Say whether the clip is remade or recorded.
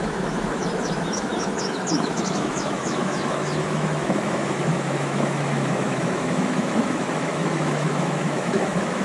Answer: remade